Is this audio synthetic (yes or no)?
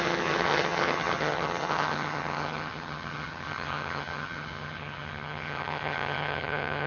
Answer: yes